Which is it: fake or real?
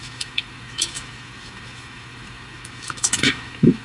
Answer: fake